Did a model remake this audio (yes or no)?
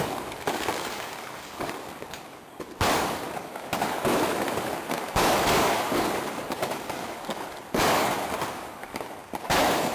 yes